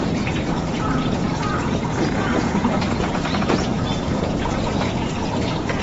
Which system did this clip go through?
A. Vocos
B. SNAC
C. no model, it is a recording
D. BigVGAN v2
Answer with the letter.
A